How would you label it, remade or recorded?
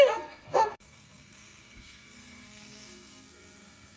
remade